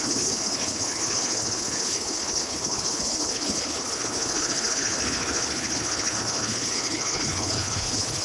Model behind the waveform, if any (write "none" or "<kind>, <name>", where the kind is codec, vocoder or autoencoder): codec, HILCodec